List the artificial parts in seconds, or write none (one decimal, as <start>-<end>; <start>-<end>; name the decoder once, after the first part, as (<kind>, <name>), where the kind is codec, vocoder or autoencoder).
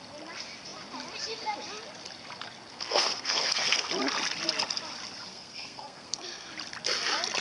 2.7-3.9 (codec, SNAC); 5.3-6.5